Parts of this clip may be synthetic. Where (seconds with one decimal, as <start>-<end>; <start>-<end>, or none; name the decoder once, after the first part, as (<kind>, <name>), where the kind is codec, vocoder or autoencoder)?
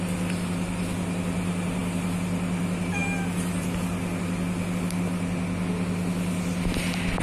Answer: none